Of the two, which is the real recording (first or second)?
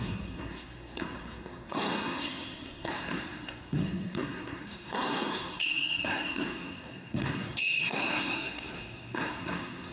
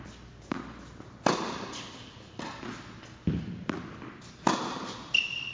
second